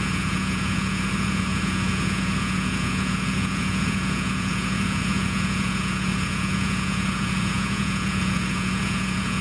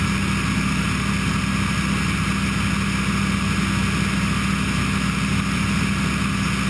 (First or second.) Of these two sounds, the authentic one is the second